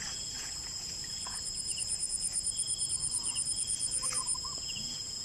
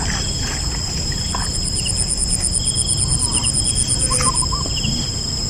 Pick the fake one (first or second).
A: first